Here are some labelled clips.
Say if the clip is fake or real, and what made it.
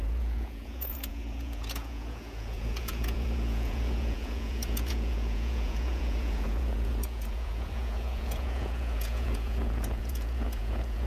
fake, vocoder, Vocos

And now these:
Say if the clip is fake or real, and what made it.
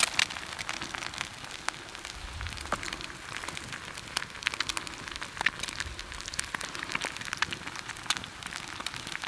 real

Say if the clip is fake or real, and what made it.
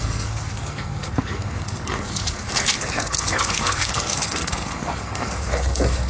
fake, codec, SNAC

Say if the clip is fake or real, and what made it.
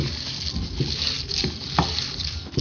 real